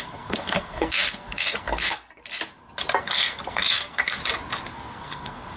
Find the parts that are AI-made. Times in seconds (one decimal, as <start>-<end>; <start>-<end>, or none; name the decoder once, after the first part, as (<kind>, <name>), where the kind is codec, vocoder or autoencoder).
0.0-2.2 (codec, SNAC); 3.0-4.2; 4.7-5.6